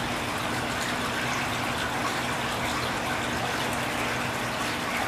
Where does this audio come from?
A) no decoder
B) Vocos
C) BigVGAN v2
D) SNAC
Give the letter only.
A